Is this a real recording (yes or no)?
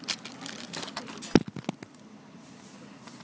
yes